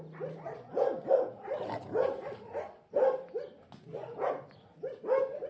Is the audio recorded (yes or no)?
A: yes